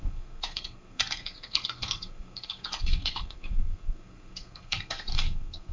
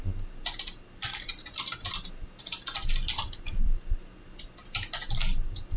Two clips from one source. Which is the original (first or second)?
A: second